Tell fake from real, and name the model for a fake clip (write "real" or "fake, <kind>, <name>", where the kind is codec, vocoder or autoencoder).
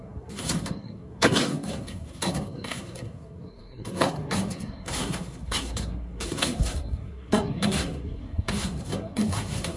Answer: fake, codec, SNAC